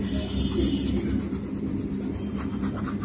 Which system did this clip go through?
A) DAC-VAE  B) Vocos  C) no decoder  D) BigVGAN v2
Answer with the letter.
C